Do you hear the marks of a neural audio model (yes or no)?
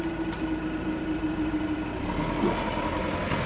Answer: no